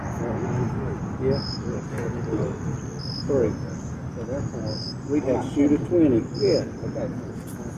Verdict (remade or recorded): recorded